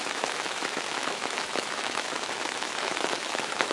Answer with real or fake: fake